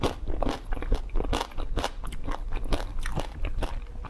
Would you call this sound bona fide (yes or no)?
yes